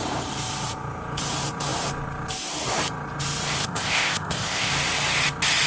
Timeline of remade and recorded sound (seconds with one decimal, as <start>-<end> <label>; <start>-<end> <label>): 0.0-3.6 recorded; 3.6-4.7 remade; 4.7-5.7 recorded